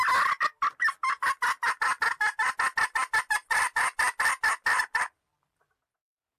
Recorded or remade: recorded